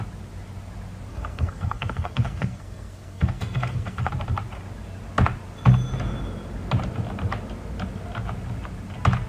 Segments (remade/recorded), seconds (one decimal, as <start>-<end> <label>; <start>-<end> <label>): 0.0-1.1 recorded; 1.1-4.1 remade; 4.1-9.3 recorded